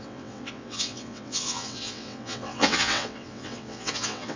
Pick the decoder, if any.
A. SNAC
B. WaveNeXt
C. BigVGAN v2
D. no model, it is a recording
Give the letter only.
B